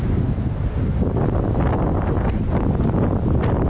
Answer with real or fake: real